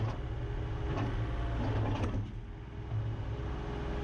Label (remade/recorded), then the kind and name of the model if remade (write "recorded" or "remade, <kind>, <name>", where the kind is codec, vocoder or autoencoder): recorded